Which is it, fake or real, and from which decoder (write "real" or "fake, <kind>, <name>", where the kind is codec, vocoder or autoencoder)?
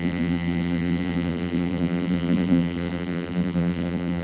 fake, vocoder, BigVGAN v2